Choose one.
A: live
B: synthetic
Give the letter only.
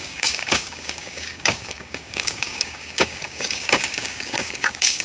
B